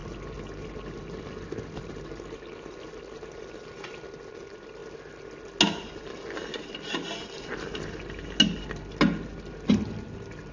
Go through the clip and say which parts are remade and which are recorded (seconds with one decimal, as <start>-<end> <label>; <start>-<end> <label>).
0.0-10.5 recorded